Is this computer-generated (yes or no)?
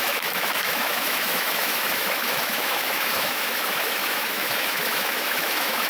yes